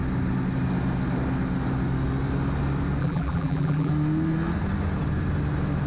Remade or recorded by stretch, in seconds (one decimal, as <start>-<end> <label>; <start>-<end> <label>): 0.0-3.0 recorded; 3.0-3.9 remade; 3.9-5.9 recorded